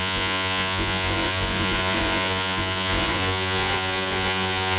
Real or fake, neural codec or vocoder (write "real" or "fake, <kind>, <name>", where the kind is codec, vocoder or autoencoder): fake, vocoder, Vocos